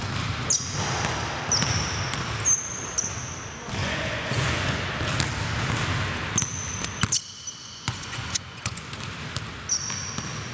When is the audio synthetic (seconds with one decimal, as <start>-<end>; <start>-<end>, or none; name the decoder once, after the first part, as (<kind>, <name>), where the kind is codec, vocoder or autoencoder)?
3.8-4.8 (vocoder, Vocos); 7.6-9.0